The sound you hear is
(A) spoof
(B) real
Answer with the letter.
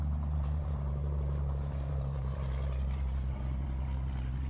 A